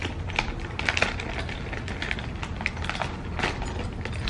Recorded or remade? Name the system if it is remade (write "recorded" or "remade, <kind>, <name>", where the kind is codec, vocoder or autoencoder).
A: recorded